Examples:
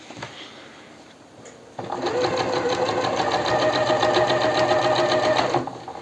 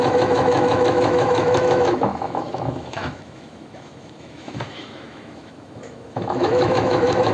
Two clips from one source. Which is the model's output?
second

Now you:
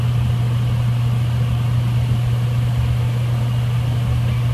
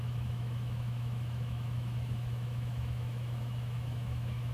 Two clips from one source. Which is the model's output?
second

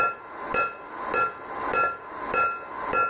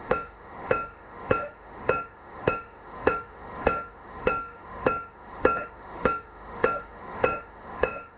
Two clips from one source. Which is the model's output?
second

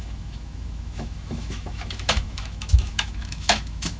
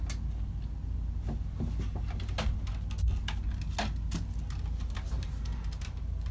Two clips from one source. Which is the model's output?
first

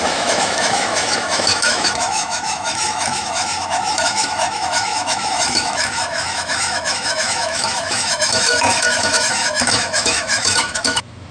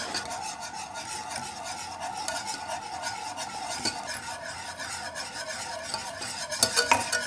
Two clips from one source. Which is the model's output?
first